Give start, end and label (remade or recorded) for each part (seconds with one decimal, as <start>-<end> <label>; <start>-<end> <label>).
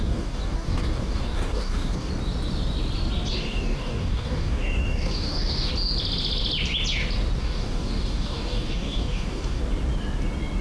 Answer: 0.0-2.1 remade; 2.1-3.3 recorded; 3.3-5.7 remade; 5.7-7.4 recorded; 7.4-9.6 remade; 9.6-10.6 recorded